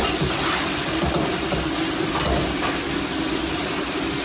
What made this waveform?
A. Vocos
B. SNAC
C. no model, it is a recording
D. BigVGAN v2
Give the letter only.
D